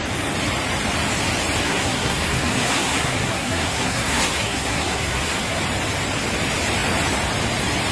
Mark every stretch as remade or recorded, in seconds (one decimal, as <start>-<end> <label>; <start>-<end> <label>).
0.0-1.6 recorded; 1.6-5.6 remade; 5.6-7.9 recorded